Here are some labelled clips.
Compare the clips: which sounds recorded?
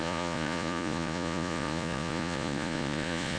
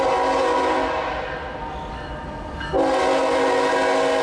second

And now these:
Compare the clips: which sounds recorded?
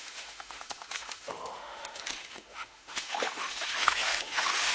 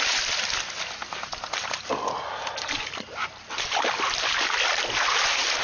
second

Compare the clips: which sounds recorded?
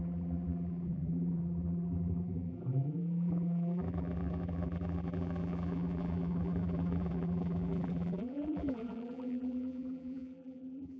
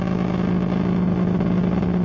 second